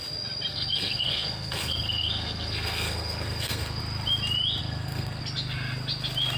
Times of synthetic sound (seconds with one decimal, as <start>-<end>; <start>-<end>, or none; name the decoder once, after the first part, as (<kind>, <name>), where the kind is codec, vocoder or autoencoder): 0.5-3.8 (codec, SNAC); 4.6-5.2